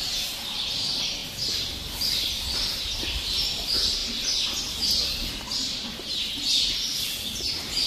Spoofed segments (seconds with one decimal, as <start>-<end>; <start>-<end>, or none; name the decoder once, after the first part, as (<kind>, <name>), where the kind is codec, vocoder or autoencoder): none